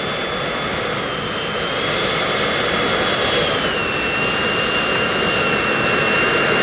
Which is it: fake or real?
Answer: real